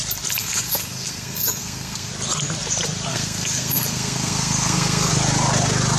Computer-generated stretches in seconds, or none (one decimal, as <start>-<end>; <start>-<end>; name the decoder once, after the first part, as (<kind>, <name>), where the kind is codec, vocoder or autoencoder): 0.4-2.1 (codec, SNAC); 3.1-5.1